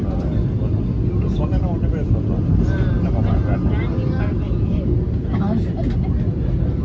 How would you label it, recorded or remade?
recorded